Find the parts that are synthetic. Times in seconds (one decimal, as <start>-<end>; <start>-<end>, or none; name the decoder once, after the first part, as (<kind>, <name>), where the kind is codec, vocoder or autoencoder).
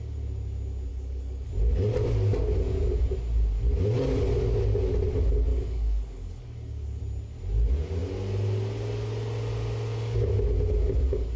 0.9-1.5 (codec, DAC); 5.5-7.0